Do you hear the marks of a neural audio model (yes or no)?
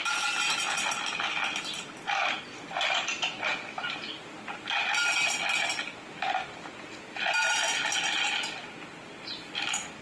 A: no